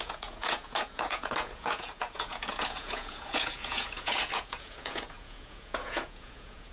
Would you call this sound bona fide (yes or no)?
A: no